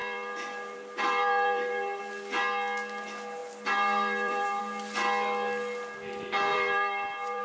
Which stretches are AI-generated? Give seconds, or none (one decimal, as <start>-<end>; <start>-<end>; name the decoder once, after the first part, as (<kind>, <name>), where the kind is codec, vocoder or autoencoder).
0.0-2.0 (vocoder, BigVGAN v2); 3.4-4.6; 6.5-7.4